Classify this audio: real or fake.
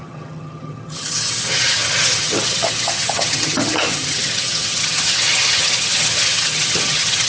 fake